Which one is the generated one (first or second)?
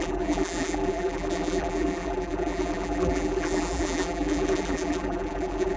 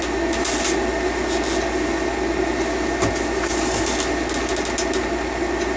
first